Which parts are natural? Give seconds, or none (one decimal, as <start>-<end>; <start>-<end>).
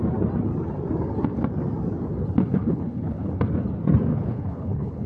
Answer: 0.0-2.4; 3.4-4.1